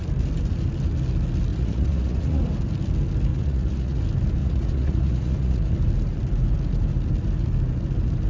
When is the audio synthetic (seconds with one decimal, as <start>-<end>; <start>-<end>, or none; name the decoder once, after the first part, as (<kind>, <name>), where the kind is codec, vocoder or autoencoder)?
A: 1.5-2.4 (vocoder, Vocos); 3.3-4.0; 4.4-5.7